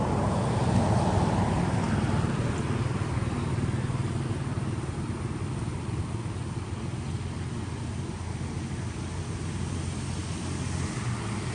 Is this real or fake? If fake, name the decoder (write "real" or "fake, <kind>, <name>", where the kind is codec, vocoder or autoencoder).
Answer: real